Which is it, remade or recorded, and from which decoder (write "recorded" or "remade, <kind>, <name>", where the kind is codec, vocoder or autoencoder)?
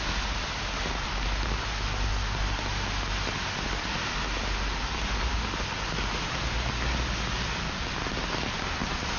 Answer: recorded